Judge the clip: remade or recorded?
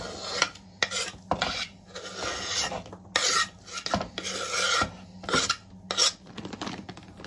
recorded